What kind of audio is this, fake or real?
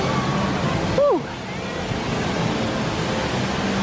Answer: real